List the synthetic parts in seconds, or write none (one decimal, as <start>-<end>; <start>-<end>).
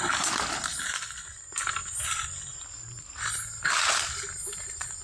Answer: none